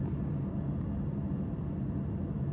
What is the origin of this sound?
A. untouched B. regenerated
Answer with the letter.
A